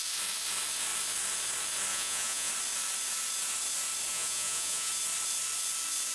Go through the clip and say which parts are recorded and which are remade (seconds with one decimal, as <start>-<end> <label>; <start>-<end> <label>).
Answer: 0.0-1.9 recorded; 1.9-2.5 remade; 2.5-4.1 recorded; 4.1-4.9 remade; 4.9-6.1 recorded